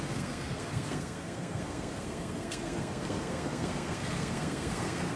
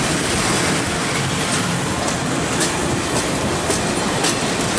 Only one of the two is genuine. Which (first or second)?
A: second